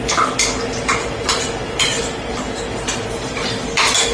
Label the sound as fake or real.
real